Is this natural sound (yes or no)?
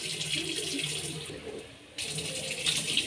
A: yes